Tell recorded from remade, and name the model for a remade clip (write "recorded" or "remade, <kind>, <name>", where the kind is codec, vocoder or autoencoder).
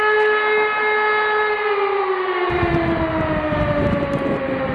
recorded